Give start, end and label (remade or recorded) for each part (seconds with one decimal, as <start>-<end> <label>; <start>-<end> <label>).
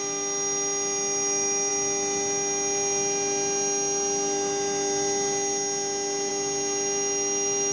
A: 0.0-7.7 recorded